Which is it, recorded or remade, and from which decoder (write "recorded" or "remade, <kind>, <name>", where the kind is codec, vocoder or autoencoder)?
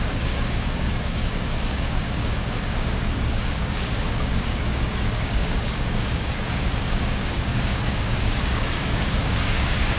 remade, codec, DAC